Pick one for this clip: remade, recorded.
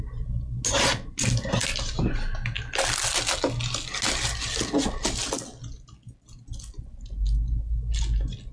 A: recorded